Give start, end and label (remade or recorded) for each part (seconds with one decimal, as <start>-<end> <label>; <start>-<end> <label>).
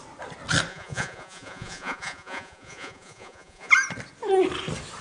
0.0-0.7 recorded; 0.7-3.7 remade; 3.7-5.0 recorded